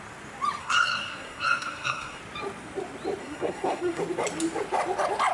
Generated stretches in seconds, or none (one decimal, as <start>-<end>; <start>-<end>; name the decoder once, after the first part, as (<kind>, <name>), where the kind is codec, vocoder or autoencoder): 0.6-2.2 (codec, SNAC); 3.2-4.0